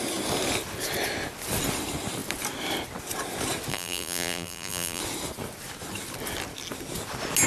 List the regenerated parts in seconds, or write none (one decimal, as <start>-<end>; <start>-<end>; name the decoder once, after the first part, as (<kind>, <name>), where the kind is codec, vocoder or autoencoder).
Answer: 3.7-5.0 (vocoder, BigVGAN v2)